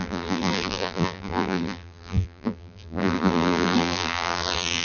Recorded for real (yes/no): no